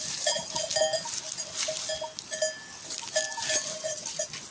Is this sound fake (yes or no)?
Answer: no